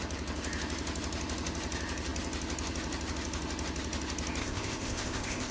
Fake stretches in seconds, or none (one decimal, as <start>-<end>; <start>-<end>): 4.4-5.5